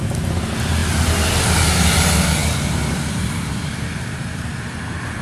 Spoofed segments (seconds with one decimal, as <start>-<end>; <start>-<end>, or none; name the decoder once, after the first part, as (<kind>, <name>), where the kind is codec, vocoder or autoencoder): 2.4-3.6 (vocoder, BigVGAN v2)